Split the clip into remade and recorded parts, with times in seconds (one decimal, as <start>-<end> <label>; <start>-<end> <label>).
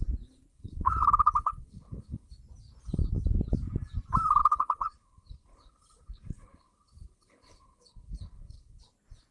0.0-0.5 recorded; 0.5-2.3 remade; 2.3-4.4 recorded; 4.4-8.8 remade; 8.8-9.3 recorded